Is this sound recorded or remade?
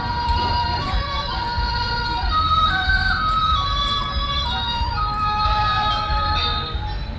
recorded